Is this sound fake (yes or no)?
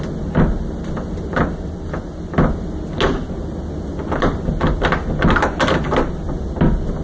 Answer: no